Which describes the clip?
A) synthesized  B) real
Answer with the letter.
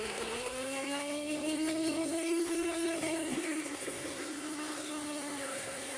A